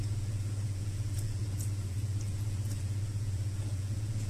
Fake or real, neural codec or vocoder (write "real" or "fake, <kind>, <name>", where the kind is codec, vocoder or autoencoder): fake, vocoder, Vocos